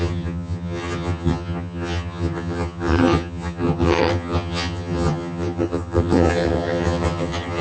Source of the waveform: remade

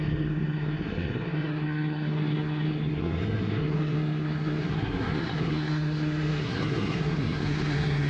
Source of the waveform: remade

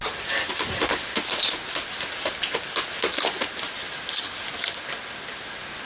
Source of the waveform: recorded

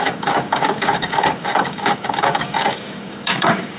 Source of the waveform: remade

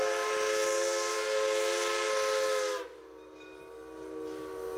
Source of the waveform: recorded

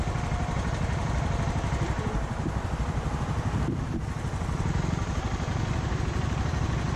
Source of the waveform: remade